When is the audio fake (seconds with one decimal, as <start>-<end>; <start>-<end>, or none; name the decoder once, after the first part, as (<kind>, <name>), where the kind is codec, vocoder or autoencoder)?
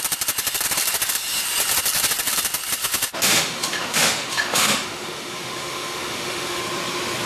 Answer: 2.8-6.6 (autoencoder, DAC-VAE)